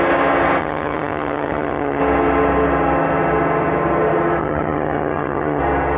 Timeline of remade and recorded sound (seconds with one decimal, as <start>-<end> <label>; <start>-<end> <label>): 0.0-0.6 recorded; 0.6-2.0 remade; 2.0-4.4 recorded; 4.4-5.6 remade; 5.6-6.0 recorded